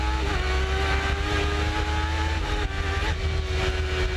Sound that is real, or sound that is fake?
real